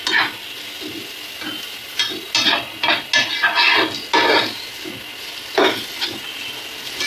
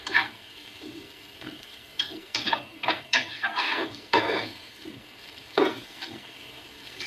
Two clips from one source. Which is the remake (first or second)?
second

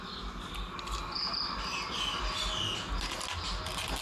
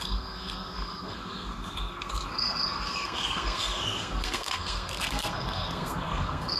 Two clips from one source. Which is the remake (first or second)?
second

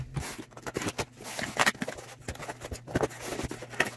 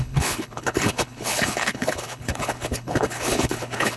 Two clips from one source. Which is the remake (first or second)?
second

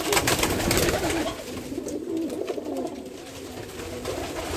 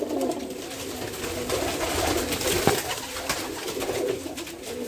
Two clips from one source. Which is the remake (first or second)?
first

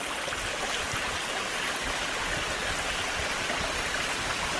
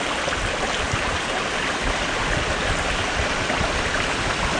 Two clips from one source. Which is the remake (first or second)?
second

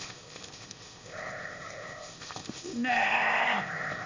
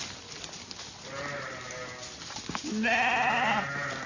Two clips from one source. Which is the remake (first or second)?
first